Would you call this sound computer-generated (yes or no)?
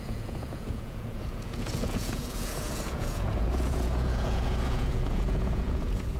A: yes